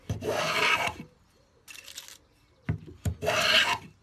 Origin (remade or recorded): recorded